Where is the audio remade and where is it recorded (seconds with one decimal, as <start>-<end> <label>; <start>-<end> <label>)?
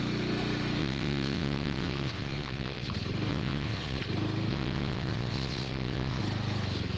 0.0-0.8 recorded; 0.8-2.9 remade; 2.9-3.3 recorded; 3.3-4.0 remade; 4.0-4.5 recorded; 4.5-6.2 remade; 6.2-7.0 recorded